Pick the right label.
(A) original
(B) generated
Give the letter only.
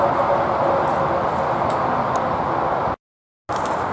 A